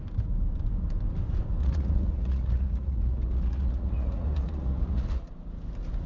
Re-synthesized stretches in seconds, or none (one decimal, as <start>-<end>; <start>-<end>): 1.6-5.3